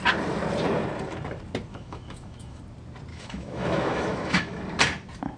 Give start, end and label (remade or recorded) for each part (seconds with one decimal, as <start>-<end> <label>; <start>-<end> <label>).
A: 0.0-1.7 recorded; 1.7-2.6 remade; 2.6-3.1 recorded; 3.1-4.6 remade; 4.6-5.4 recorded